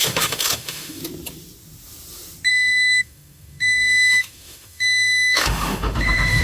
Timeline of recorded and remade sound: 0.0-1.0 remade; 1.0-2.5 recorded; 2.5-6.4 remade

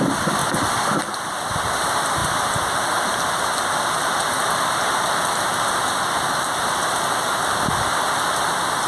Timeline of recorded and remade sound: 0.0-8.9 recorded

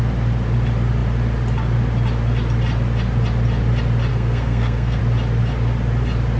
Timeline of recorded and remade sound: 0.0-4.1 recorded; 4.1-5.0 remade; 5.0-6.4 recorded

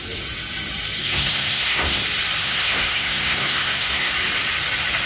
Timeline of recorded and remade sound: 0.0-1.0 recorded; 1.0-2.0 remade; 2.0-2.4 recorded; 2.4-4.1 remade; 4.1-5.1 recorded

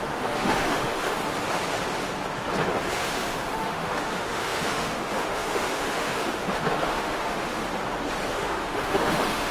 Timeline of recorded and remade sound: 0.0-1.2 remade; 1.2-2.9 recorded; 2.9-7.6 remade; 7.6-8.3 recorded; 8.3-9.5 remade

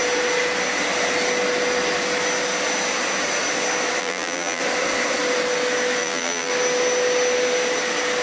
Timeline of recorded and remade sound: 0.0-4.0 recorded; 4.0-4.6 remade; 4.6-6.0 recorded; 6.0-6.5 remade; 6.5-8.2 recorded